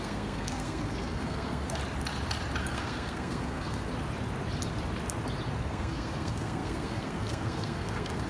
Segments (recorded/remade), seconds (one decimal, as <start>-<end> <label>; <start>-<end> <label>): 0.0-1.8 remade; 1.8-2.6 recorded; 2.6-3.9 remade; 3.9-5.6 recorded; 5.6-8.3 remade

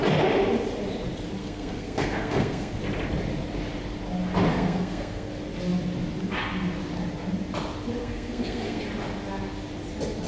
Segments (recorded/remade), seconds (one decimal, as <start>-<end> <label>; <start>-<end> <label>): 0.0-1.4 recorded; 1.4-2.8 remade; 2.8-4.5 recorded; 4.5-5.3 remade; 5.3-8.0 recorded; 8.0-8.8 remade; 8.8-10.3 recorded

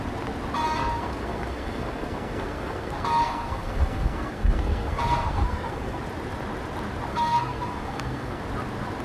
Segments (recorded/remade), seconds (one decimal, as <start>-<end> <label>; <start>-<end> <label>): 0.0-0.8 recorded; 0.8-6.0 remade; 6.0-7.1 recorded; 7.1-8.4 remade; 8.4-9.0 recorded

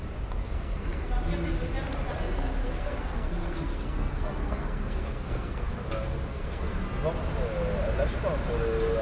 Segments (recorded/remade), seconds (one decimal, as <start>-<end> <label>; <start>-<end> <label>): 0.0-0.4 recorded; 0.4-1.1 remade; 1.1-2.6 recorded; 2.6-5.7 remade; 5.7-6.3 recorded; 6.3-6.8 remade; 6.8-9.0 recorded